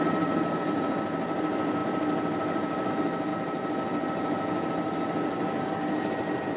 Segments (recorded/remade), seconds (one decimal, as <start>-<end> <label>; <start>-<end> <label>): 0.0-3.3 remade; 3.3-5.6 recorded; 5.6-6.6 remade